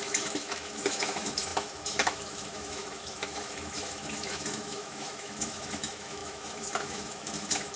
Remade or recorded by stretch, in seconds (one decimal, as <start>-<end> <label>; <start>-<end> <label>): 0.0-7.8 remade